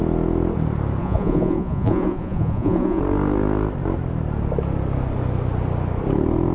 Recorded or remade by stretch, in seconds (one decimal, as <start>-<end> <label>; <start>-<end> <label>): 0.0-1.0 recorded; 1.0-3.0 remade; 3.0-6.5 recorded